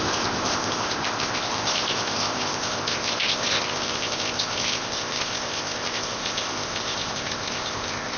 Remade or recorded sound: remade